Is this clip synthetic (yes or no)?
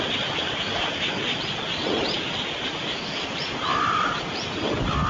no